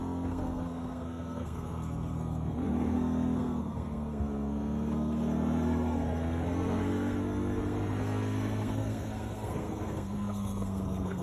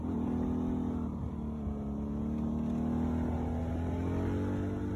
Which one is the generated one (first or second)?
first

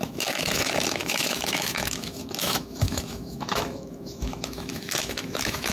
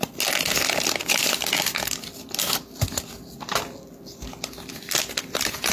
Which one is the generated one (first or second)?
first